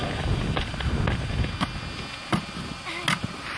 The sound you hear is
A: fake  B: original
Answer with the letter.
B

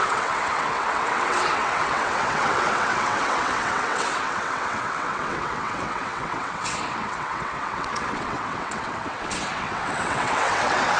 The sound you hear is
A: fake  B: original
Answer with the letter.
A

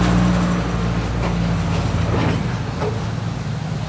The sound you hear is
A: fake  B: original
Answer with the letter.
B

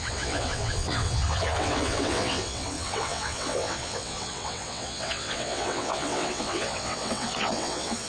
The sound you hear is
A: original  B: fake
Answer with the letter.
B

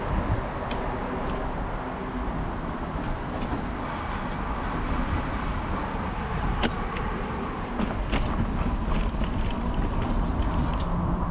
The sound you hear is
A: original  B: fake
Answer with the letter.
A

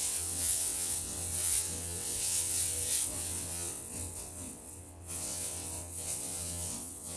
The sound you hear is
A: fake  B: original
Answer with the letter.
A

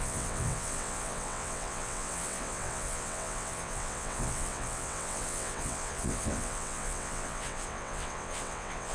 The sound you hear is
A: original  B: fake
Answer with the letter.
B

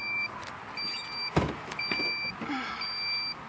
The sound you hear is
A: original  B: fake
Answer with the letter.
A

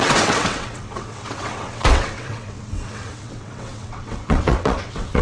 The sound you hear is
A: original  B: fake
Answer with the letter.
B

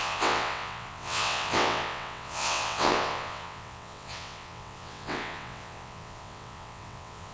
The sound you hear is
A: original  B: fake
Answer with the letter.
B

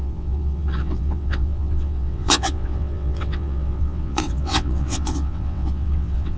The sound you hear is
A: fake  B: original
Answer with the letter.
A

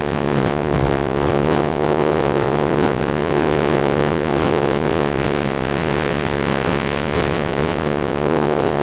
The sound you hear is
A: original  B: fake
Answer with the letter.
B